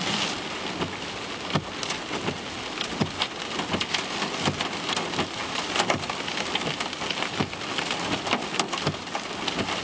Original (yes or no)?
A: yes